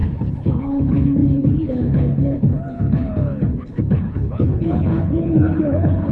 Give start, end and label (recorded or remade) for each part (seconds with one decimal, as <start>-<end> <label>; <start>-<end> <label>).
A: 0.0-6.1 remade